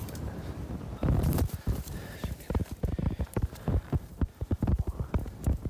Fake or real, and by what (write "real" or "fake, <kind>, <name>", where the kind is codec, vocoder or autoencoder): fake, vocoder, BigVGAN v2